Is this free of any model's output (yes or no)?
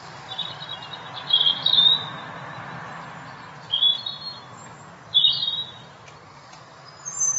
yes